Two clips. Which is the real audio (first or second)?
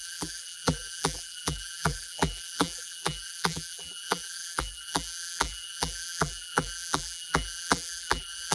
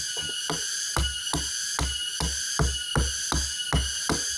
second